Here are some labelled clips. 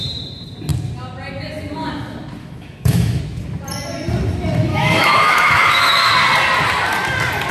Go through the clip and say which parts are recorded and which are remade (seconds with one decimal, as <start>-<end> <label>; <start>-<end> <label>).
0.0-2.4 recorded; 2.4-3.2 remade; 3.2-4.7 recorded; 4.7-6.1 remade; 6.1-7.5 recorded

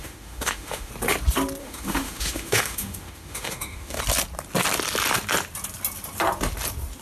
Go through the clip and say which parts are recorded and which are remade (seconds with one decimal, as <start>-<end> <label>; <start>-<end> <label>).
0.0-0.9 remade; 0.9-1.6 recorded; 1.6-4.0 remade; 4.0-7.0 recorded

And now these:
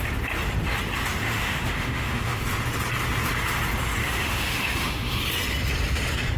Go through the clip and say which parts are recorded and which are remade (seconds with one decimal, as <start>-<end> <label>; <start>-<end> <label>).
0.0-1.2 recorded; 1.2-2.4 remade; 2.4-4.0 recorded; 4.0-5.2 remade; 5.2-6.4 recorded